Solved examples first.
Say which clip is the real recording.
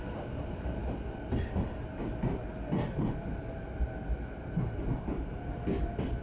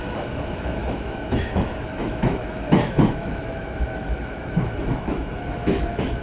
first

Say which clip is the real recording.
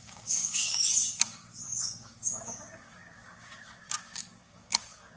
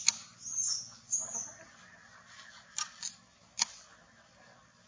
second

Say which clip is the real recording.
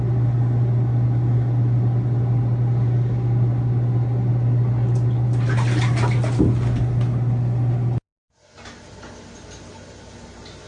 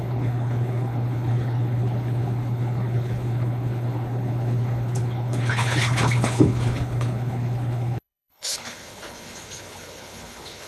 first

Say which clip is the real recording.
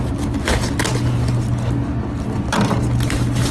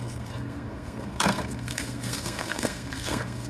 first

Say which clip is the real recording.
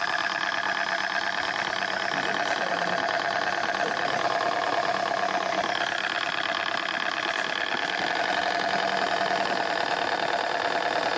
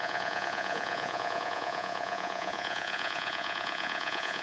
first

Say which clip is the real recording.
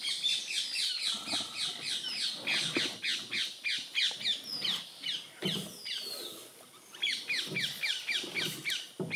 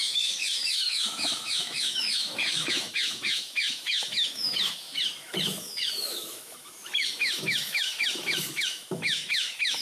first